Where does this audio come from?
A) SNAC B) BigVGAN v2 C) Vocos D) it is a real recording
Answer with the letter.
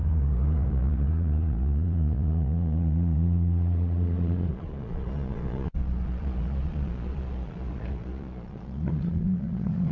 C